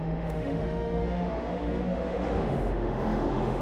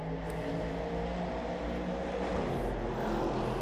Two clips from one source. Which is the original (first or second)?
second